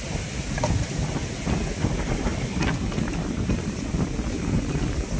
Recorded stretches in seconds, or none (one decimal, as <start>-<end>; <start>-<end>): 0.0-5.2